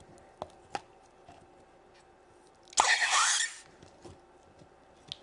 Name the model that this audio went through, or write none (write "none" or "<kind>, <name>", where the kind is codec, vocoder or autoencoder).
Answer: none